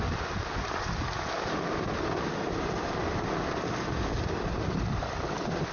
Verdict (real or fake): real